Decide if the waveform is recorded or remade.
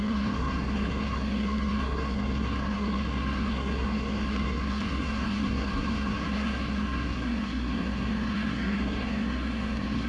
remade